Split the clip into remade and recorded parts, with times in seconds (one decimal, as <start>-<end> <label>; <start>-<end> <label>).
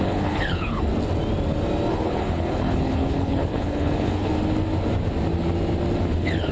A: 0.0-0.9 remade; 0.9-1.9 recorded; 1.9-4.3 remade; 4.3-6.1 recorded; 6.1-6.5 remade